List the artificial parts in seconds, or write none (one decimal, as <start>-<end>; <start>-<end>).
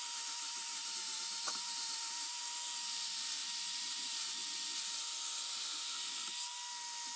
0.7-2.4; 3.4-4.3